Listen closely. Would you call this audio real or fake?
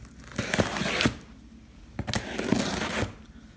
real